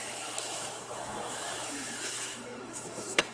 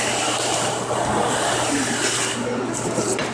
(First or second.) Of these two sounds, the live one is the second